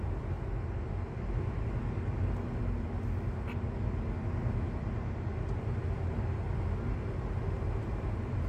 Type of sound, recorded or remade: recorded